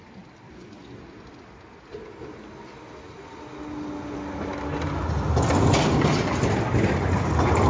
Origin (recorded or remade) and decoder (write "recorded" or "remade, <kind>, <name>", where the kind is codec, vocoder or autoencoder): recorded